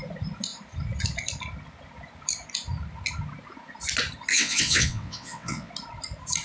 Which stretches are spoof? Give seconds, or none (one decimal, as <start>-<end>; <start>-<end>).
4.3-5.7